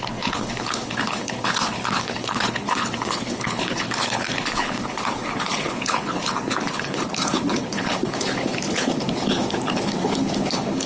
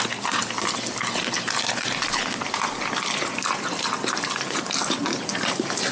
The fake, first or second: first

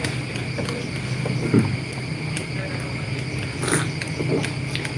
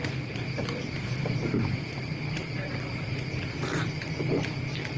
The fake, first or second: second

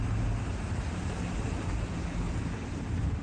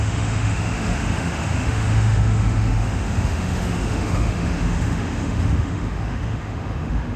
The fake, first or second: second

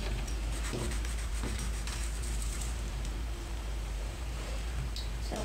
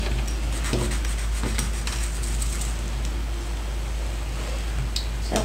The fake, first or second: first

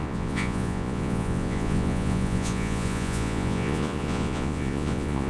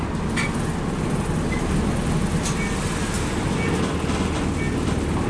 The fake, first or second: first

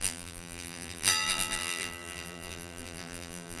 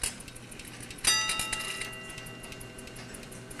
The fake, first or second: first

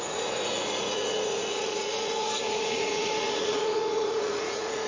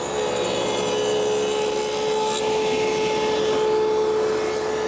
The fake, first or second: first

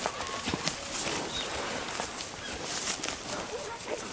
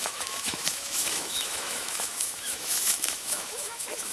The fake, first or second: second